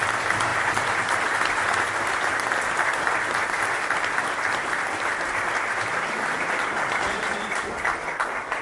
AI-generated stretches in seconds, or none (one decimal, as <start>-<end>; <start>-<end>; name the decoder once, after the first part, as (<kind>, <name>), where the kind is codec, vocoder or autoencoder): 0.0-8.6 (vocoder, BigVGAN v2)